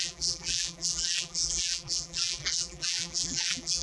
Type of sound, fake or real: fake